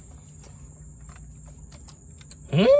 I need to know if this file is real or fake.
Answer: real